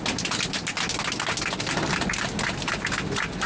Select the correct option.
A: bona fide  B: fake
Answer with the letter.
A